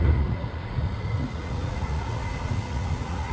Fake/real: fake